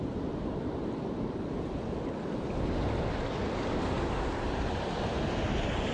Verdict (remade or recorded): recorded